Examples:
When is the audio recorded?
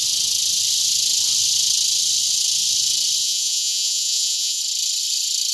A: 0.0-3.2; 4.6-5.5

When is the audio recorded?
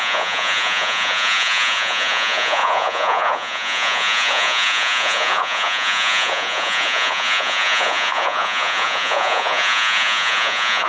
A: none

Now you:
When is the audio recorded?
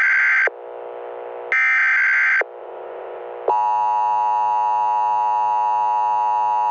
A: 0.0-2.6; 3.2-6.7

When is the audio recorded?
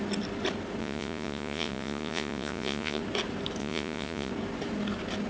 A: 0.0-0.8; 3.0-3.6; 4.3-5.3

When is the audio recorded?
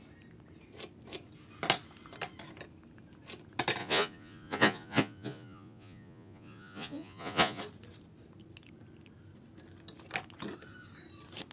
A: 0.0-3.8; 7.6-11.5